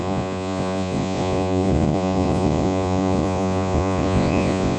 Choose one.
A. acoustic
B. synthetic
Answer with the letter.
B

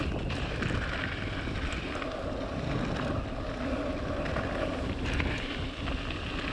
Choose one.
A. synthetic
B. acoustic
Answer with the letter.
B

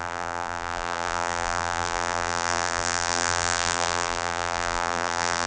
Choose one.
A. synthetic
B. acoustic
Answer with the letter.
A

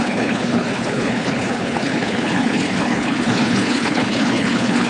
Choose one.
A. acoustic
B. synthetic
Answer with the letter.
B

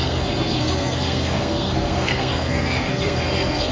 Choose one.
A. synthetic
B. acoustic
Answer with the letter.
A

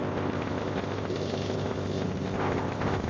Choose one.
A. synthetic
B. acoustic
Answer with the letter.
A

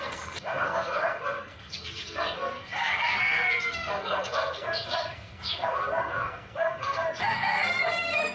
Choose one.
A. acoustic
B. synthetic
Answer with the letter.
B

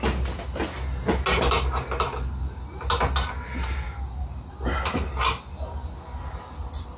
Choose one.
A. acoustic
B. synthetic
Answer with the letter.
A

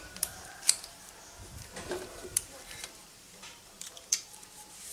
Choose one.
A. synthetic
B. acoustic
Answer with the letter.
A